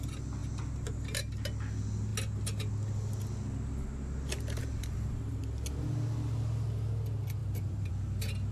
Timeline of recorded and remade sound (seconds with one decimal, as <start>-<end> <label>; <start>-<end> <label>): 0.0-4.6 recorded; 4.6-5.4 remade; 5.4-7.4 recorded; 7.4-7.9 remade; 7.9-8.5 recorded